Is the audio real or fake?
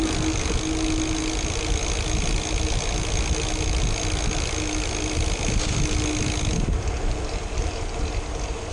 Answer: real